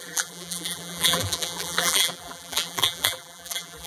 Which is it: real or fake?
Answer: fake